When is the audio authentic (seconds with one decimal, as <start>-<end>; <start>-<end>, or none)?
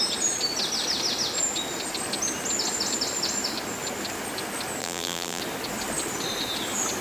0.0-4.8; 5.4-7.0